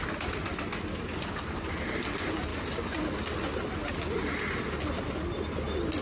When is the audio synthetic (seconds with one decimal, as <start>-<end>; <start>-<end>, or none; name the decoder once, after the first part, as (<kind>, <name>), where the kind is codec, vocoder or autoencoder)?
none